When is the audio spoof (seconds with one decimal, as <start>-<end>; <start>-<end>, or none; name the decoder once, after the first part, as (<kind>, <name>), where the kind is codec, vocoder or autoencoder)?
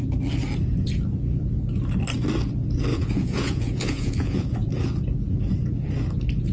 2.9-4.7 (vocoder, Vocos)